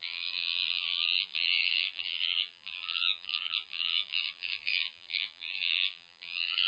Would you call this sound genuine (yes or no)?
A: no